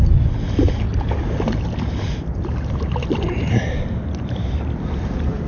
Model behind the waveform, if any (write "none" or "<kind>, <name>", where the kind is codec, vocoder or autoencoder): none